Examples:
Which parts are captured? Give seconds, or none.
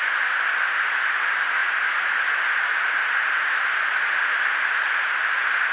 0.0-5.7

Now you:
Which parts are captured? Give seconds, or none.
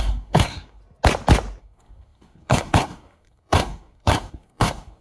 0.8-1.6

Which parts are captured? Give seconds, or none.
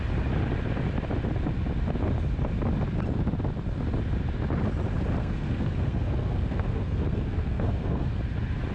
0.0-5.2; 8.2-8.7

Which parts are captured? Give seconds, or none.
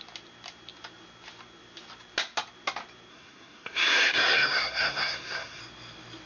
0.0-3.1; 5.6-6.3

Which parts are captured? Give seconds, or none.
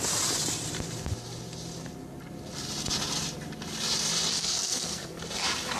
0.0-4.3; 5.2-5.8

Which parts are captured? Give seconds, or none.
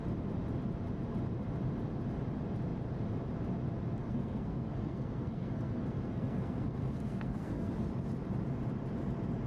0.0-4.0; 7.7-9.5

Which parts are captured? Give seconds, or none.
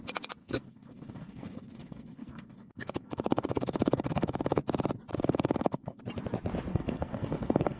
0.0-0.4; 4.6-5.1; 6.0-6.7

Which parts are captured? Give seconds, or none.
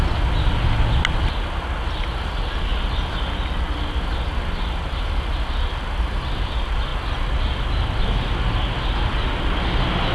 0.0-10.1